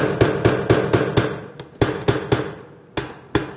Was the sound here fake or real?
real